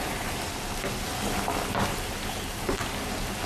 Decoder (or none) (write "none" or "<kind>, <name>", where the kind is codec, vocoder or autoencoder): none